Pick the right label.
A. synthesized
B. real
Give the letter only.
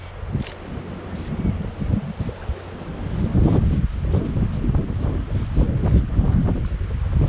B